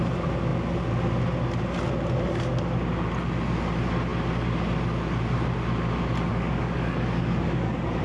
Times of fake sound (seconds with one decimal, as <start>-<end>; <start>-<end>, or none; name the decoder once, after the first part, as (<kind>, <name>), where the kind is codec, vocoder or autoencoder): 6.3-8.0 (codec, DAC)